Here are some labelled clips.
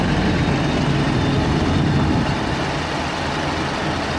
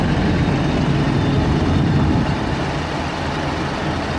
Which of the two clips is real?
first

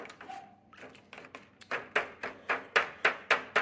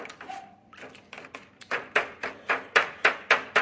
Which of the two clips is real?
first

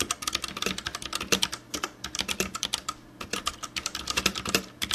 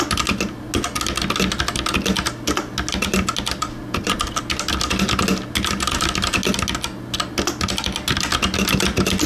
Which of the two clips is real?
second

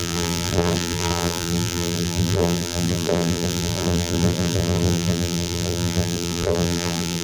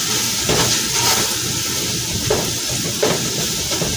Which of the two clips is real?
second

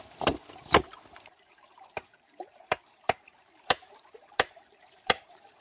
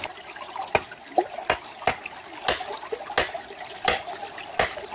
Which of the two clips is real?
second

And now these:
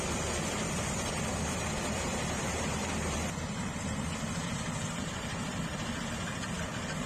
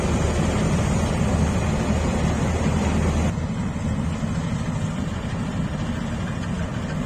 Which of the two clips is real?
second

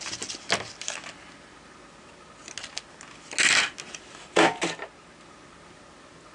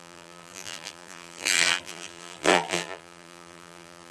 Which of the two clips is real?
first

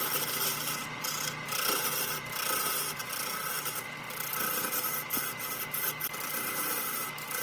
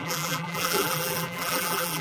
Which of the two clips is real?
first